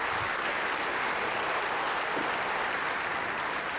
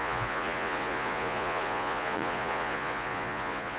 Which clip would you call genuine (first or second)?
first